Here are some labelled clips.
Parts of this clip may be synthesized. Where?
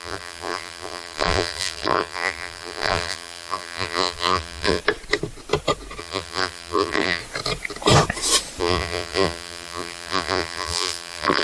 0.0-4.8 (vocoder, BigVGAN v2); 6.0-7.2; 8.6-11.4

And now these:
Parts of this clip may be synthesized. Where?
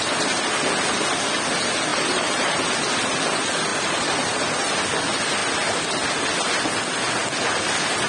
1.9-2.6 (vocoder, BigVGAN v2); 3.7-4.7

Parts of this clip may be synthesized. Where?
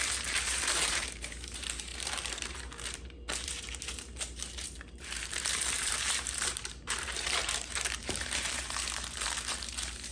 0.0-10.1 (vocoder, BigVGAN v2)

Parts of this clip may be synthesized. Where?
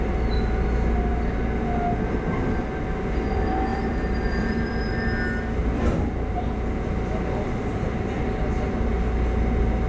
3.7-4.9 (vocoder, BigVGAN v2); 5.6-8.9